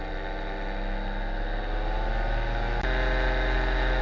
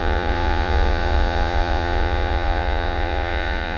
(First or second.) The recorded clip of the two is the first